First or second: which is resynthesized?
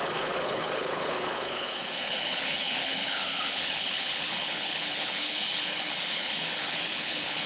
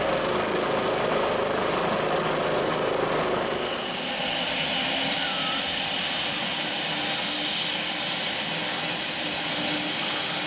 first